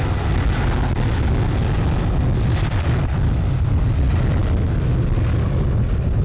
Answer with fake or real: real